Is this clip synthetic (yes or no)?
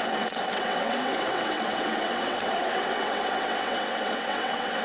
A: yes